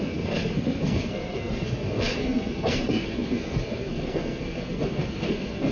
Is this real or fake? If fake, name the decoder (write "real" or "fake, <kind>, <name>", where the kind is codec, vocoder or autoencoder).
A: fake, codec, SNAC